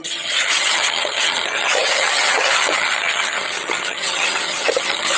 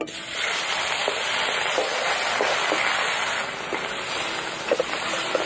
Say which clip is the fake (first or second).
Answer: first